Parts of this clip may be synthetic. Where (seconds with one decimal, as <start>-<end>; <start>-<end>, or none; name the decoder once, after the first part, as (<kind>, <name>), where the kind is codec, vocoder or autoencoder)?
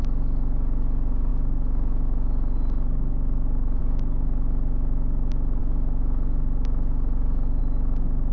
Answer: none